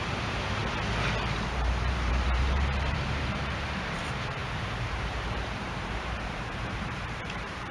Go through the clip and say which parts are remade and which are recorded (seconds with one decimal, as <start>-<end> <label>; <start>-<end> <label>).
0.0-0.6 remade; 0.6-1.2 recorded; 1.2-7.7 remade